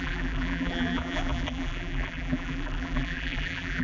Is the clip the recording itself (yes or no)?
no